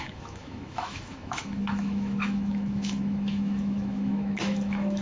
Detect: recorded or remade remade